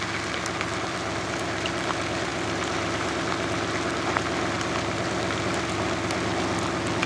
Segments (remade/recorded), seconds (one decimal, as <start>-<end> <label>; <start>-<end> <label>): 0.0-7.1 recorded